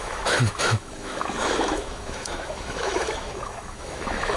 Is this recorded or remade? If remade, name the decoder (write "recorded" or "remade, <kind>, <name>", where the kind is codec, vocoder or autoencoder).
remade, autoencoder, DAC-VAE